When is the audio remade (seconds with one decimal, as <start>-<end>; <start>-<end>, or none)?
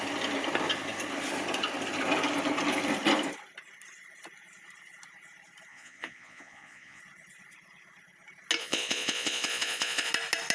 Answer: 5.7-7.0; 8.6-10.1